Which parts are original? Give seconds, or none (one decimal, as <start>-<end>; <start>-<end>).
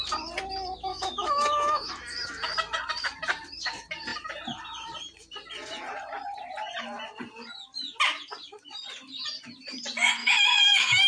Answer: 0.0-0.9; 1.9-10.2